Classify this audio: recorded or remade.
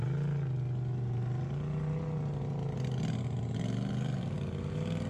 recorded